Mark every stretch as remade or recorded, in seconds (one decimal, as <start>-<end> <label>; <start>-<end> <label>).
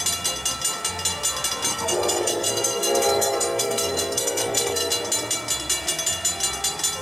0.0-1.7 recorded; 1.7-4.9 remade; 4.9-7.0 recorded